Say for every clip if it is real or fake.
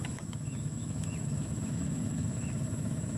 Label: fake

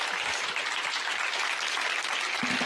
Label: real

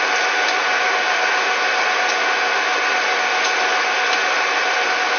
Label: real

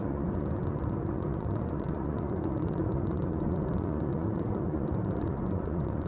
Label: fake